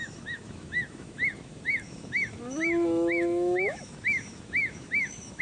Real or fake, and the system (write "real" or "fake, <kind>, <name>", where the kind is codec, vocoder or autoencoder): fake, autoencoder, DAC-VAE